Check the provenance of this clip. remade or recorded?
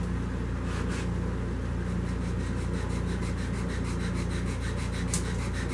recorded